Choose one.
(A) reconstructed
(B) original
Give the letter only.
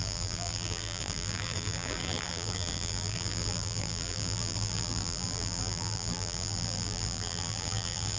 A